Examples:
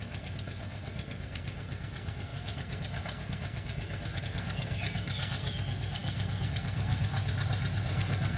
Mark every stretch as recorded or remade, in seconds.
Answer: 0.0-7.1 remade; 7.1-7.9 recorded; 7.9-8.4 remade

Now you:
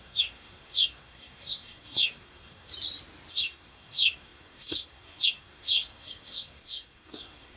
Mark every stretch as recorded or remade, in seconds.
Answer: 0.0-2.7 remade; 2.7-3.3 recorded; 3.3-7.6 remade